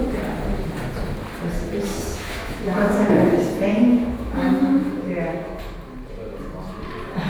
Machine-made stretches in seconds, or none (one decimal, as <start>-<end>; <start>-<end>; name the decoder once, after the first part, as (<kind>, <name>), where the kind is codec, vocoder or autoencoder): 1.9-3.1 (autoencoder, DAC-VAE); 3.7-5.6